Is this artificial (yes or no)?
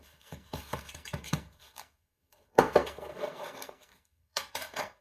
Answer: yes